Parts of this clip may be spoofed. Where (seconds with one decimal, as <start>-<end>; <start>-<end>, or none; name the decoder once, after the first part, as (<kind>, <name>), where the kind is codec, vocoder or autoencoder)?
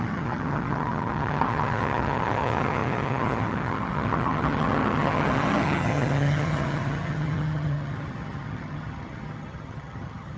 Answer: 0.0-10.4 (vocoder, HiFi-GAN)